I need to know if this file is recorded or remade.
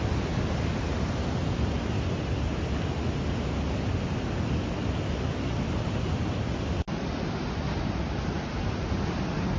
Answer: recorded